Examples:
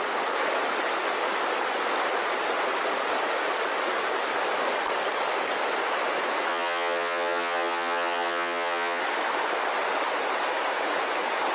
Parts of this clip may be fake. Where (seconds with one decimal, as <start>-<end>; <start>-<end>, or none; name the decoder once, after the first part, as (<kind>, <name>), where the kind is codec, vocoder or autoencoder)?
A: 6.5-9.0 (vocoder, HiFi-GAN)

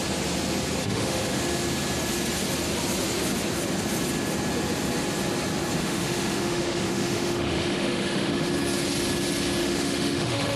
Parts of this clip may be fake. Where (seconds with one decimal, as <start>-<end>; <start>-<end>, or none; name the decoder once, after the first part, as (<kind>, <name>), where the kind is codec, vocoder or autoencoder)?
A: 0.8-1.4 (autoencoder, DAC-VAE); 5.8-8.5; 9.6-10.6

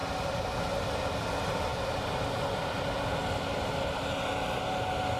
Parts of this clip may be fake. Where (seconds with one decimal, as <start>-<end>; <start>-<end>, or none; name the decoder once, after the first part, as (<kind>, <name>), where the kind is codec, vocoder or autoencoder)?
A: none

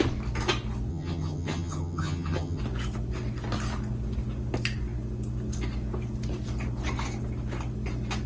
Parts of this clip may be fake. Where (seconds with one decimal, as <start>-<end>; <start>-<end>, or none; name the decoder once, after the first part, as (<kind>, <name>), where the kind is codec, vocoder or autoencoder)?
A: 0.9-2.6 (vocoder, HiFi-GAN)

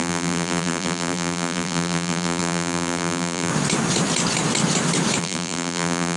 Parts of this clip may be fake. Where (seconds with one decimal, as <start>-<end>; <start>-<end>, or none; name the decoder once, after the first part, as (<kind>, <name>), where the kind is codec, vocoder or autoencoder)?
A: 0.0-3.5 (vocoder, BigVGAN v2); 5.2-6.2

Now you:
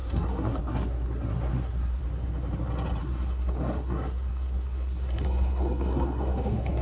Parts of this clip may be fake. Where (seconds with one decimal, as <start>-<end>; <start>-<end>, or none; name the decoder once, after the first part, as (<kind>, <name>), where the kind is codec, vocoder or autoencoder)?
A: 0.0-2.0 (codec, SNAC); 3.0-6.8